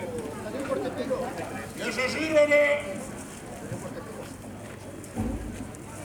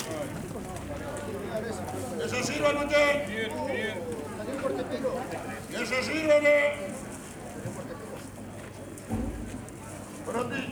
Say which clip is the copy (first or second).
first